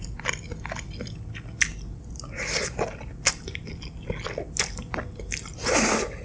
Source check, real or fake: real